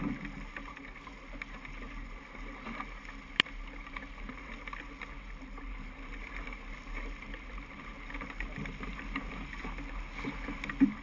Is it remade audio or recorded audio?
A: recorded